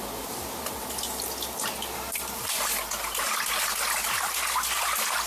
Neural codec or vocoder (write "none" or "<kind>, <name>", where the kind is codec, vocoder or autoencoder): none